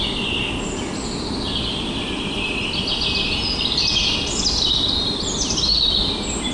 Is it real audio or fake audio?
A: real